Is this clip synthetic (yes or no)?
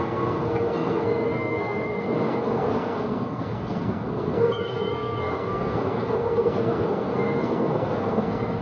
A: yes